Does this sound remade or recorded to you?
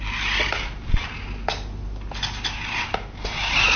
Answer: recorded